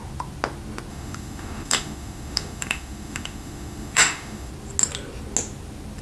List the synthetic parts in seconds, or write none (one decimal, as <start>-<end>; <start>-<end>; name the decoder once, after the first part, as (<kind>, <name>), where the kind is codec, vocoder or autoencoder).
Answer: 0.9-4.5 (autoencoder, DAC-VAE)